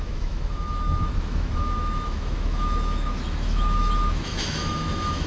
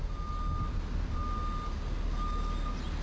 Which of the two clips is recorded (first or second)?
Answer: second